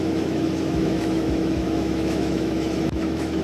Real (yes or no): no